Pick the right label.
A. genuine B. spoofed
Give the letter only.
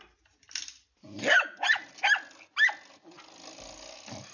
A